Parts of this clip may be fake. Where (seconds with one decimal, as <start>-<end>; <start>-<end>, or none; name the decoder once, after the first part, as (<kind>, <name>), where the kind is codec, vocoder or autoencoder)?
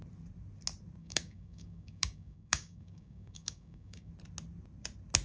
1.0-4.1 (codec, DAC)